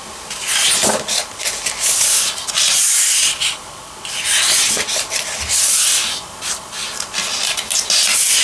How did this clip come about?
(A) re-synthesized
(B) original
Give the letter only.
B